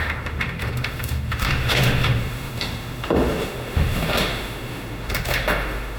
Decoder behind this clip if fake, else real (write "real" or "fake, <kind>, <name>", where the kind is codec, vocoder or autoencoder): fake, autoencoder, DAC-VAE